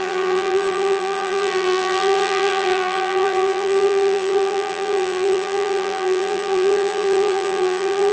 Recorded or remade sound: remade